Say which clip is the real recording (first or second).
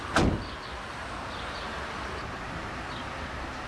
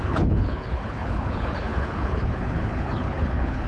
first